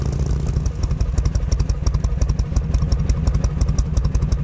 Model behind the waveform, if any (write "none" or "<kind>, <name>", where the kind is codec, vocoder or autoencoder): none